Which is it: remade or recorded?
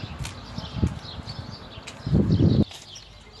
recorded